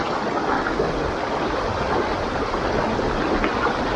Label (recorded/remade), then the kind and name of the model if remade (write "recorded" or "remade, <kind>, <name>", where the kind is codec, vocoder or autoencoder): recorded